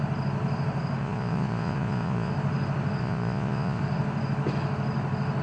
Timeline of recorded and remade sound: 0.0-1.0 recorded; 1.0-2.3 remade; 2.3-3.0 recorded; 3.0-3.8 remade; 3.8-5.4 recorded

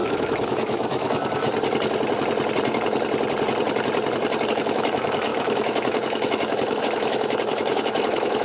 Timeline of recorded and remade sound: 0.0-1.4 remade; 1.4-4.5 recorded; 4.5-8.4 remade

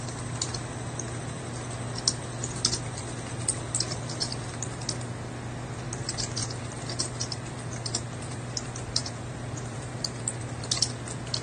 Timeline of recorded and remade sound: 0.0-6.4 recorded; 6.4-10.2 remade; 10.2-11.4 recorded

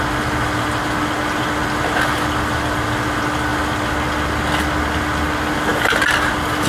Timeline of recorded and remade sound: 0.0-6.7 recorded